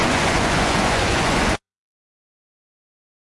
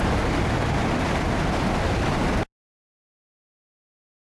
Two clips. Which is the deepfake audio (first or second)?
first